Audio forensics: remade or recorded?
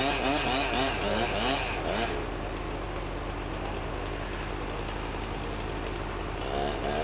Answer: recorded